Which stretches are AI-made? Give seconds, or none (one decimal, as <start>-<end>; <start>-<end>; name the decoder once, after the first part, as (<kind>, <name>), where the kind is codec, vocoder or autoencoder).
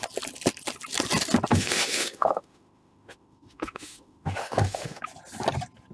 1.5-5.0 (autoencoder, DAC-VAE)